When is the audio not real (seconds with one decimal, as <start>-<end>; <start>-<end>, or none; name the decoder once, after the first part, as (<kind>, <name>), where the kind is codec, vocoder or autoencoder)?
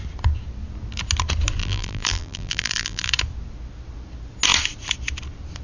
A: 1.6-3.1 (vocoder, BigVGAN v2)